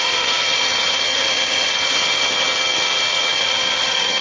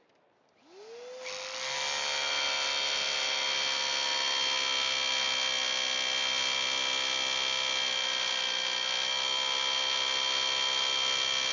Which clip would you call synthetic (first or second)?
first